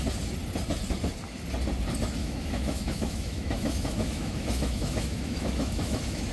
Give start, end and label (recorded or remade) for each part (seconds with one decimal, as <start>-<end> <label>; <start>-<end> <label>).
0.0-2.2 recorded; 2.2-6.3 remade